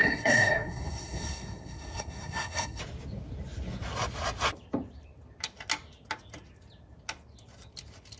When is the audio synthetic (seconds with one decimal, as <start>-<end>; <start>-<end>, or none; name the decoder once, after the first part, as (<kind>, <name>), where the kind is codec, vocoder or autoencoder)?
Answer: 0.0-2.8 (codec, SNAC)